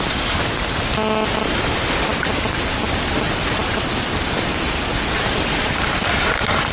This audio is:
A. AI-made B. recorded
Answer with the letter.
B